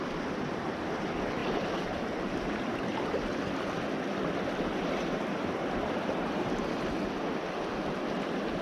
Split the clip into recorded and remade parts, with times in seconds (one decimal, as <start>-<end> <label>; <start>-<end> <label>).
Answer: 0.0-8.6 recorded